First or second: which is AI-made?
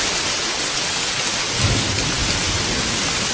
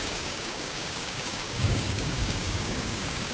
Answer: second